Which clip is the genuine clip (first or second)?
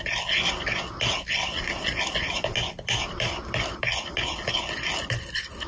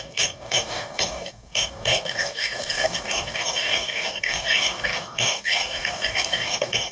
first